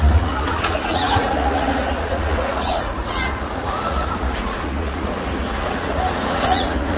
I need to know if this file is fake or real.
fake